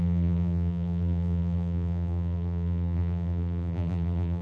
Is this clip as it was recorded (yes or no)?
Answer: no